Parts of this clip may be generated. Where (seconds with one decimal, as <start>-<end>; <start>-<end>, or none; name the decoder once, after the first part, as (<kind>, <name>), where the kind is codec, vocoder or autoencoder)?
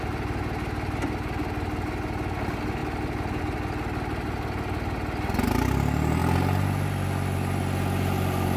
none